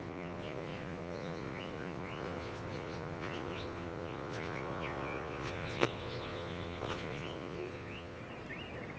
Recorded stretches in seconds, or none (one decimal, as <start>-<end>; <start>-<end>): 8.2-9.0